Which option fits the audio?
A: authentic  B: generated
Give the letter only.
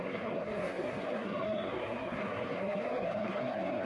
B